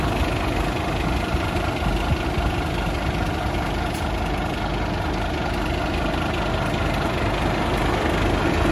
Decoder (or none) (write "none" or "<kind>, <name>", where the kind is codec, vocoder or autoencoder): none